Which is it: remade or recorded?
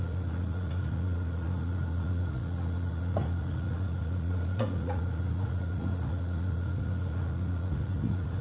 remade